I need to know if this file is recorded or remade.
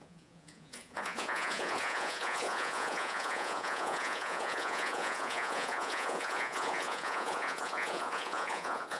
remade